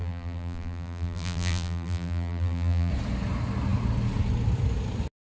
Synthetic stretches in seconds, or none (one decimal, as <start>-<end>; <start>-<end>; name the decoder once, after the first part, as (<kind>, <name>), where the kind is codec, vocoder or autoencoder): 0.0-2.9 (vocoder, BigVGAN v2)